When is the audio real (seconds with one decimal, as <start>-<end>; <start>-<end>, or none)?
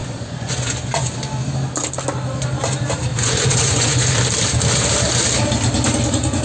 1.2-3.1; 4.1-6.4